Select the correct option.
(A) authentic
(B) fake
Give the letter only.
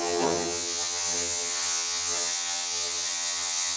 B